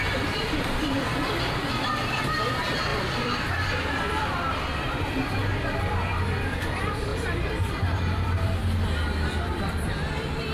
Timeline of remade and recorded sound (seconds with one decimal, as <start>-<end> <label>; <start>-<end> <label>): 0.0-8.6 remade; 8.6-9.3 recorded; 9.3-10.5 remade